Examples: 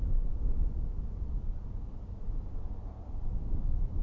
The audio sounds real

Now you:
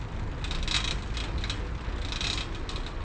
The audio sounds real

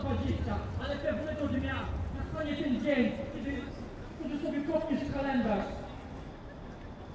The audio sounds real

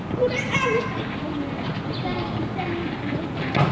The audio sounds real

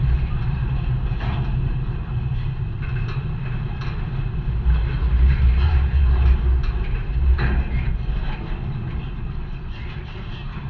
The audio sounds real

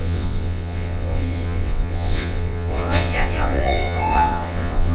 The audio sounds fake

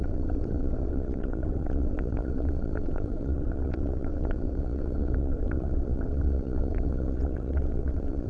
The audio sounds fake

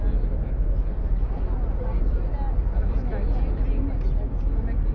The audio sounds real